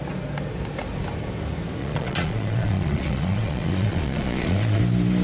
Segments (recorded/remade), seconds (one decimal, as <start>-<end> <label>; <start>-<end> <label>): 0.0-1.8 recorded; 1.8-4.8 remade; 4.8-5.2 recorded